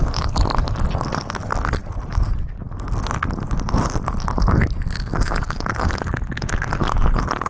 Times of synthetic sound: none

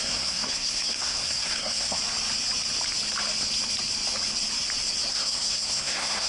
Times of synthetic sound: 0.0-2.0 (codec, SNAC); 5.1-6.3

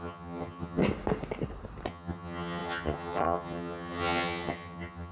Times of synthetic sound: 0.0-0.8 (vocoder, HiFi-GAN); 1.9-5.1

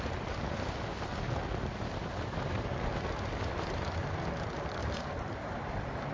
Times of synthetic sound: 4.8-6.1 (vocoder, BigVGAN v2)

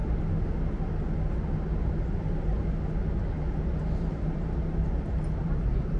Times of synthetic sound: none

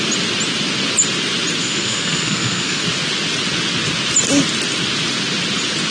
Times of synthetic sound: 1.6-2.8 (codec, SNAC)